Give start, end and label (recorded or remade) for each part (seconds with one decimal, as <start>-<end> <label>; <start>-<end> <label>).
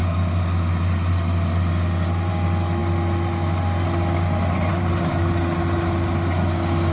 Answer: 0.0-6.9 recorded